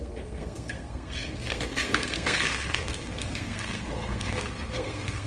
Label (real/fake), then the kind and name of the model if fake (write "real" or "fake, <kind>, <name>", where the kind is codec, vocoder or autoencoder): fake, codec, SNAC